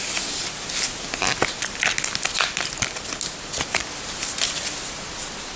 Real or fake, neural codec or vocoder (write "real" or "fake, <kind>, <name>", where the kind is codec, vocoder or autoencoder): real